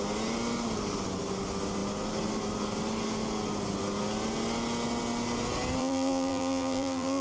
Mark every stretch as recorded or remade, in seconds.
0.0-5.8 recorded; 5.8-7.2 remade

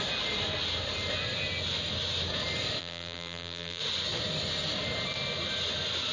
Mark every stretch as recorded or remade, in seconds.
0.0-2.8 recorded; 2.8-3.8 remade; 3.8-6.1 recorded

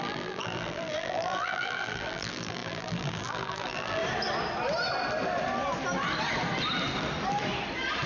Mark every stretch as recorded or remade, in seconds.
0.0-4.0 remade; 4.0-8.1 recorded

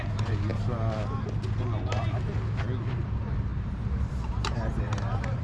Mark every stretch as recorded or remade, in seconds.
0.0-0.5 remade; 0.5-2.9 recorded; 2.9-5.4 remade

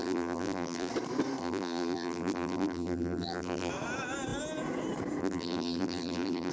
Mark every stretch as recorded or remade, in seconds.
0.0-0.9 remade; 0.9-1.4 recorded; 1.4-3.7 remade; 3.7-5.2 recorded; 5.2-6.5 remade